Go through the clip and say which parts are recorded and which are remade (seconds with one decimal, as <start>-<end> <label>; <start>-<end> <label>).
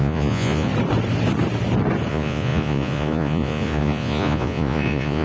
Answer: 0.0-0.7 remade; 0.7-2.1 recorded; 2.1-5.2 remade